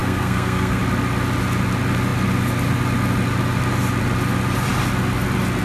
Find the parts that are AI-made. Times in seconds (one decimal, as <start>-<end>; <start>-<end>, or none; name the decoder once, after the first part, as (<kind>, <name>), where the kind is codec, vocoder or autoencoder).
0.0-0.8 (codec, SNAC)